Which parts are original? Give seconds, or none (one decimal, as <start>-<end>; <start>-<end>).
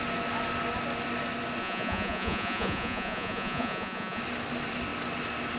0.0-1.6; 4.2-5.6